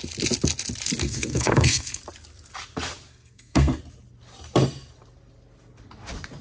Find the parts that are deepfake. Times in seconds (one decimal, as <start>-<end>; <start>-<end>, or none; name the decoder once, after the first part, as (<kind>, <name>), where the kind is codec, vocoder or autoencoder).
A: 1.0-2.0 (codec, SNAC); 3.1-3.8